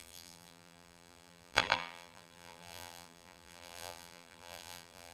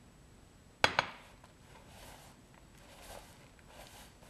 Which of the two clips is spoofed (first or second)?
first